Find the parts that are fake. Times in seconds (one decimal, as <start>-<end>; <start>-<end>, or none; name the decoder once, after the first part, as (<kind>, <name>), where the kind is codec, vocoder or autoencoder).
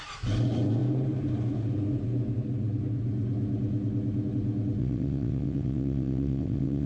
4.8-6.9 (vocoder, WaveNeXt)